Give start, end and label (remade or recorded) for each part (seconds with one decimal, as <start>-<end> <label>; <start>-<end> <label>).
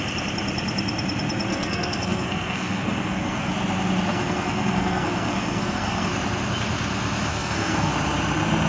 0.0-1.5 recorded; 1.5-3.5 remade; 3.5-4.1 recorded; 4.1-6.1 remade; 6.1-7.3 recorded; 7.3-7.9 remade; 7.9-8.7 recorded